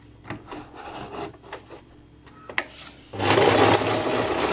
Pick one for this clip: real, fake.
real